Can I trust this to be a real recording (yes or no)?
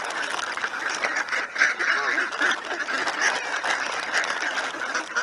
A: yes